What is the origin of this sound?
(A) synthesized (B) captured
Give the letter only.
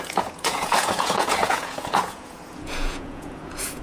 A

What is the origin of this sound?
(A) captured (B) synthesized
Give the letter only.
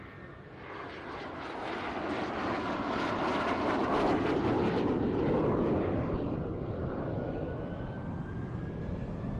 A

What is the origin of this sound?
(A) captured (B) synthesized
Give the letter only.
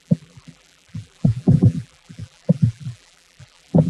B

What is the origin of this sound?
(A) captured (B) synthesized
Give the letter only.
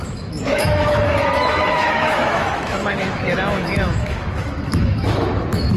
B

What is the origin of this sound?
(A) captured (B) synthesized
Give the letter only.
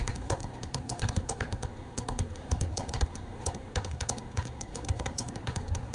B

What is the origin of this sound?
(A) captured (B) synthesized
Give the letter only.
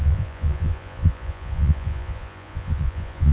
B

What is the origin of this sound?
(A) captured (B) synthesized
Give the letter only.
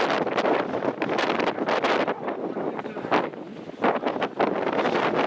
A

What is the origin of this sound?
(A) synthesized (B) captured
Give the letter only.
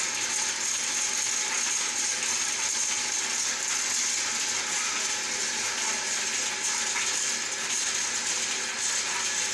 B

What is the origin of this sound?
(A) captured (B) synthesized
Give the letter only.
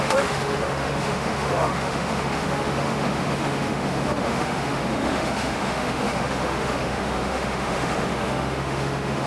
B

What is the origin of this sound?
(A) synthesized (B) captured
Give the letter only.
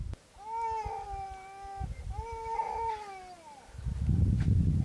B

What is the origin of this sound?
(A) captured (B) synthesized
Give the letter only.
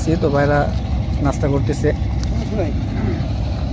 A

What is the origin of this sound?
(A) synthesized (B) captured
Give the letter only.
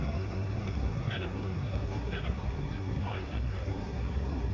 A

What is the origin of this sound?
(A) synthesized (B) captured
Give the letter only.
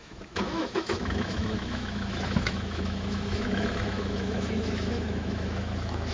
A